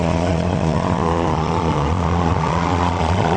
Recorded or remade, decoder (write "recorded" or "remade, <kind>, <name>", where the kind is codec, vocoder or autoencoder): remade, vocoder, Vocos